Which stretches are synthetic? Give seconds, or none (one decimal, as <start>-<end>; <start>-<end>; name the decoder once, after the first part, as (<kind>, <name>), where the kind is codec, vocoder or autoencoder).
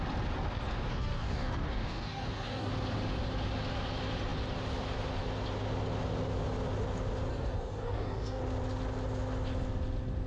0.9-2.7 (codec, DAC); 7.3-8.4